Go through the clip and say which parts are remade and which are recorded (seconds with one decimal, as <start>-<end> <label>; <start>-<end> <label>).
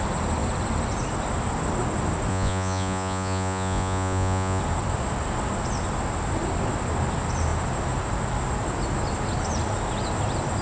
0.0-2.3 recorded; 2.3-4.6 remade; 4.6-10.6 recorded